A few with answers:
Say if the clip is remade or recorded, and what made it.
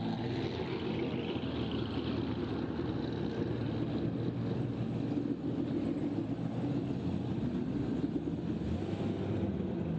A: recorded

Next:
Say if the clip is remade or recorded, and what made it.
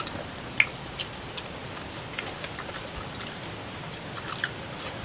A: recorded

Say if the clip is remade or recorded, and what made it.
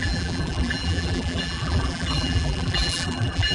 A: remade, vocoder, BigVGAN v2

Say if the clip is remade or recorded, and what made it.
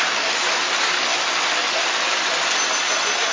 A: remade, vocoder, BigVGAN v2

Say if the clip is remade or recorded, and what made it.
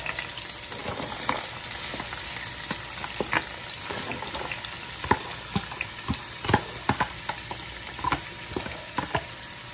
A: recorded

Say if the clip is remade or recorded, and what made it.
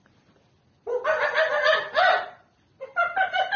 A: recorded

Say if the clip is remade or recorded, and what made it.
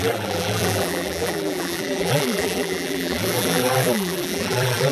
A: remade, vocoder, BigVGAN v2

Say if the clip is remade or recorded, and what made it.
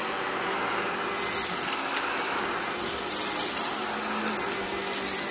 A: recorded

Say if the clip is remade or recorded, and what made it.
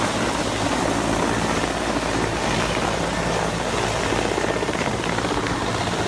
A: recorded